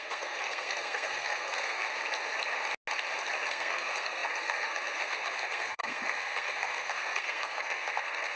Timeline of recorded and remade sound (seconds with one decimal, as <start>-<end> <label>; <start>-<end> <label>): 0.0-1.9 remade; 1.9-3.5 recorded; 3.5-8.4 remade